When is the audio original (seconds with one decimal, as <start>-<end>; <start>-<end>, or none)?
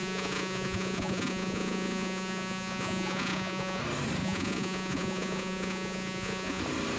3.8-4.2; 6.6-7.0